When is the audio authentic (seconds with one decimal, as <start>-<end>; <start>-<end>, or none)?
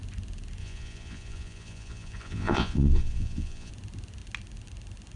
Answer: 0.0-0.6; 3.7-5.2